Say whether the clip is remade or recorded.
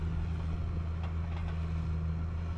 recorded